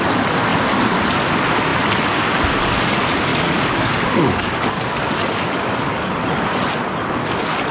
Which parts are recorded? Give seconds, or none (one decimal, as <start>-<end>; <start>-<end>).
0.0-3.3; 6.1-7.7